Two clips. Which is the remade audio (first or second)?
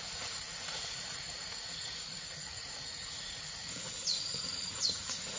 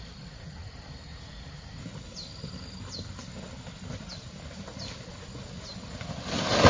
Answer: first